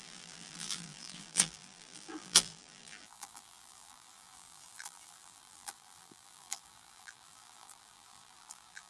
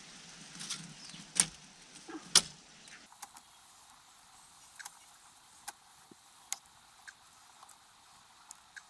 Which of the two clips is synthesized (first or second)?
first